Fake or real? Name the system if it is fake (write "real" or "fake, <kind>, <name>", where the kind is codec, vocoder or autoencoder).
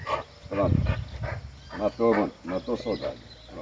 real